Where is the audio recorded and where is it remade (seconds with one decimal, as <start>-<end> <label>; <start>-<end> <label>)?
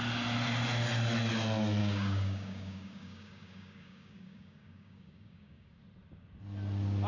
0.0-1.8 recorded; 1.8-5.8 remade; 5.8-7.1 recorded